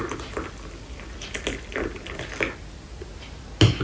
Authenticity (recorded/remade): recorded